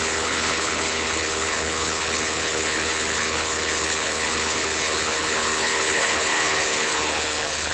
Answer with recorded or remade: remade